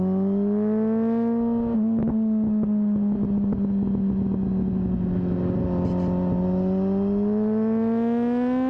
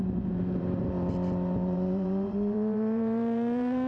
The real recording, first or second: first